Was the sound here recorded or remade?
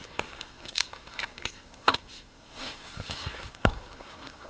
remade